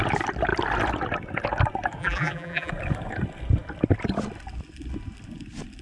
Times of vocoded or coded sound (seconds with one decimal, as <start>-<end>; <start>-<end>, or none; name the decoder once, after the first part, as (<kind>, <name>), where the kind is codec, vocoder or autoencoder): 2.0-2.7 (vocoder, BigVGAN v2)